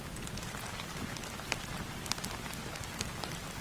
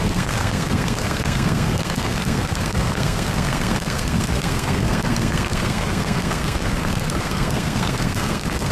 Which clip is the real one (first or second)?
first